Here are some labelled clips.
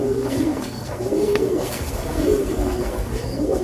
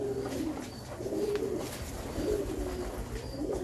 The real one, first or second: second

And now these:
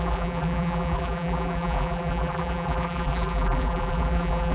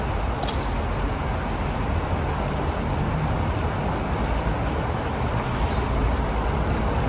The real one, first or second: second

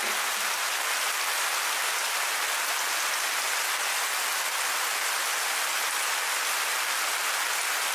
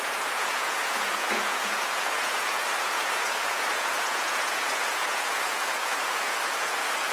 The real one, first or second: first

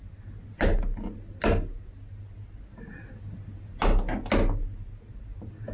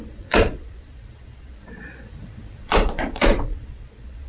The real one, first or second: first